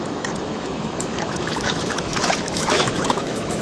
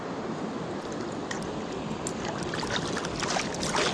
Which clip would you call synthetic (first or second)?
first